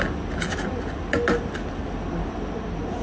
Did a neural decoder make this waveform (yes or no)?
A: no